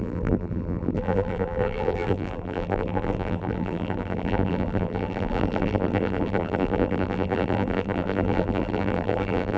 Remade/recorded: remade